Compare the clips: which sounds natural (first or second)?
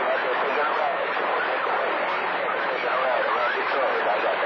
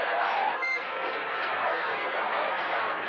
first